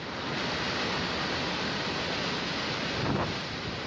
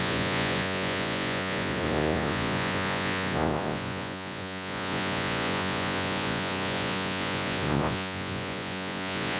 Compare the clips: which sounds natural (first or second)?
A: first